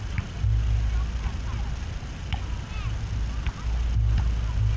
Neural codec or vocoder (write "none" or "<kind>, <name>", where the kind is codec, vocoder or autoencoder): none